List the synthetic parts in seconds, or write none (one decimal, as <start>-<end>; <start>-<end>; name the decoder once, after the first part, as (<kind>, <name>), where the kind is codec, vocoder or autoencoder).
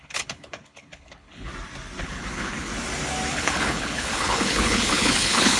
0.0-1.5 (codec, HILCodec); 2.0-2.7; 3.3-5.6